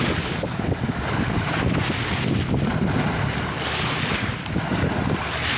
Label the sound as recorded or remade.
recorded